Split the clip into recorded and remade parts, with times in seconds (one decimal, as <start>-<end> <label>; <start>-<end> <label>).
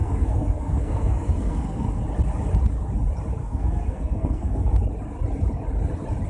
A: 0.0-2.0 remade; 2.0-3.4 recorded; 3.4-4.7 remade; 4.7-6.3 recorded